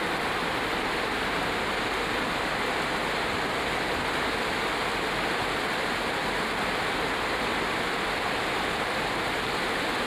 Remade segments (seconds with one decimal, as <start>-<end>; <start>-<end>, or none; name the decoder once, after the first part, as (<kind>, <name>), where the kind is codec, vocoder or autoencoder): 6.2-6.8 (vocoder, BigVGAN v2); 7.5-8.0